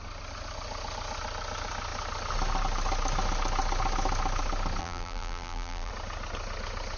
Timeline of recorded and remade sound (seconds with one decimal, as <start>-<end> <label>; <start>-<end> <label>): 0.0-4.8 recorded; 4.8-5.9 remade; 5.9-7.0 recorded